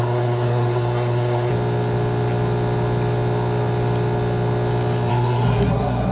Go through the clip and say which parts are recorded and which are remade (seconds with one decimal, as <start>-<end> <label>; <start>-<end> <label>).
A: 0.0-1.5 remade; 1.5-5.1 recorded; 5.1-6.1 remade